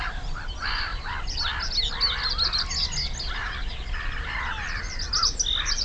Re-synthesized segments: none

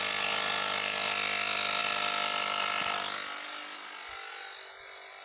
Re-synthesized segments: none

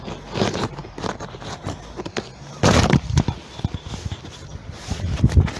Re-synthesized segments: none

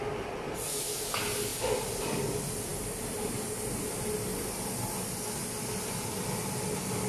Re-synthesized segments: none